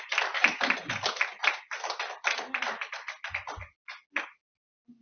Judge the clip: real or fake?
real